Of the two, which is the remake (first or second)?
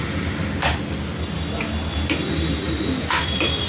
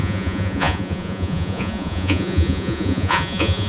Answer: second